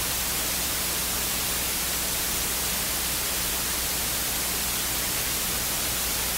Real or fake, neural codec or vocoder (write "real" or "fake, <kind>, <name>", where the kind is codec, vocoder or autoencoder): real